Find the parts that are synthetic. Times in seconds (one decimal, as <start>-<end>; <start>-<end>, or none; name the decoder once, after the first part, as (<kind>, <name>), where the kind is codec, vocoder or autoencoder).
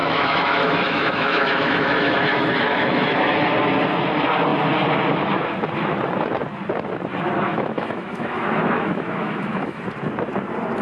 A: 0.0-3.4 (autoencoder, DAC-VAE); 7.5-9.8